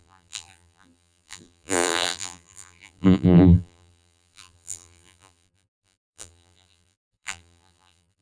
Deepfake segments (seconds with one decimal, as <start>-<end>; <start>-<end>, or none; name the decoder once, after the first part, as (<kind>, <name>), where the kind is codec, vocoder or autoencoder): 0.0-8.2 (vocoder, BigVGAN v2)